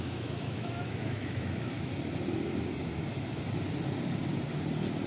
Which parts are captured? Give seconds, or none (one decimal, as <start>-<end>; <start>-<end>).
1.9-5.1